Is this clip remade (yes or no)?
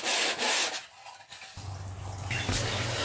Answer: no